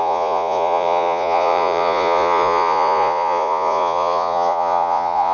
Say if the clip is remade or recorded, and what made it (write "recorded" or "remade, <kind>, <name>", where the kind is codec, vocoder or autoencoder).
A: remade, vocoder, Vocos